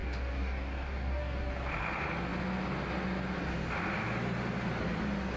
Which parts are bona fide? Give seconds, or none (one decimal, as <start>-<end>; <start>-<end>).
1.5-5.4